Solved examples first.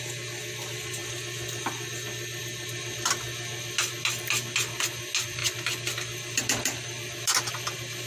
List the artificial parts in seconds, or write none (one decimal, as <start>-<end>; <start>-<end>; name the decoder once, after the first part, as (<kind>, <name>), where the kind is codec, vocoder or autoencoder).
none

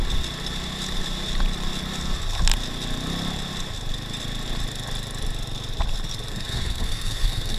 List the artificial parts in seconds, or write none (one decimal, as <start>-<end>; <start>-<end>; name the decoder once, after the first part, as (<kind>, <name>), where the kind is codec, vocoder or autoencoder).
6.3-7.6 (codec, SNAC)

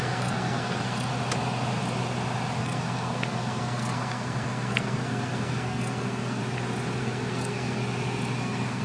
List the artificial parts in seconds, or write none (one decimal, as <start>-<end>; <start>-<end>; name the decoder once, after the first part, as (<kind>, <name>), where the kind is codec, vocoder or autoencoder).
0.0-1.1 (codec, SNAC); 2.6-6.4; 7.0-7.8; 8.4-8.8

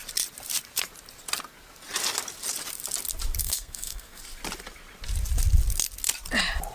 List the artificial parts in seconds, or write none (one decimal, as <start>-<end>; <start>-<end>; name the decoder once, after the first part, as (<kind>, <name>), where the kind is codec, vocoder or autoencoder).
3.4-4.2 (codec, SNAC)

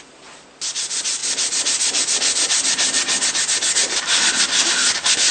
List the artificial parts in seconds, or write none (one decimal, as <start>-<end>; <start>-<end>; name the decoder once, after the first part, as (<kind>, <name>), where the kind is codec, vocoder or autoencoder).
none

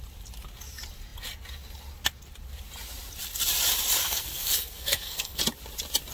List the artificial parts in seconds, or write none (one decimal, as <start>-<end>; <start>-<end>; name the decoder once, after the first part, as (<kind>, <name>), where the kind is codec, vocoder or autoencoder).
4.0-5.4 (codec, SNAC)

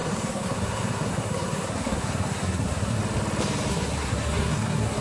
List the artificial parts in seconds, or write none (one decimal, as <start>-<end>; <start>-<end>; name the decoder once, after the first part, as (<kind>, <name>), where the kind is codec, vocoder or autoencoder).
0.0-3.0 (codec, SNAC); 3.7-5.0

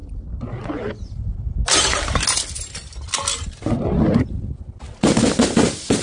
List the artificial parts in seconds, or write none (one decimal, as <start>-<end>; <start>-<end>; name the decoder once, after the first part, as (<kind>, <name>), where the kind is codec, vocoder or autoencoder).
none